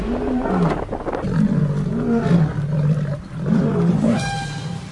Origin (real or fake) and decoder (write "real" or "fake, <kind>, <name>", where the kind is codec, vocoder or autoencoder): real